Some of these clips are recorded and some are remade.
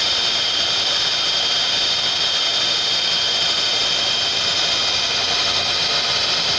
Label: recorded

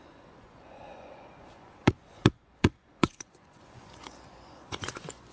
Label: remade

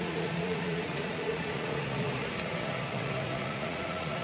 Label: remade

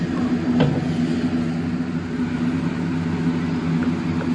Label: recorded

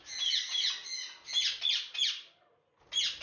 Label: recorded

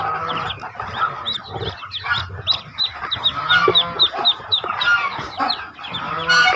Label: recorded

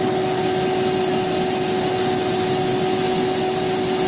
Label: recorded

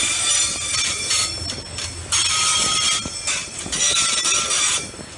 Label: recorded